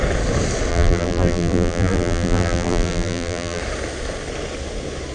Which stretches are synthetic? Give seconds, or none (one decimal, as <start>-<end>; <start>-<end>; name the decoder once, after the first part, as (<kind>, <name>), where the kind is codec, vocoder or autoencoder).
0.7-3.6 (vocoder, BigVGAN v2)